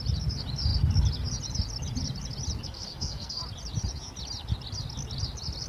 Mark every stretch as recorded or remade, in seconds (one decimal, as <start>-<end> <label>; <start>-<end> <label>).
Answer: 0.0-2.6 recorded; 2.6-3.4 remade; 3.4-5.7 recorded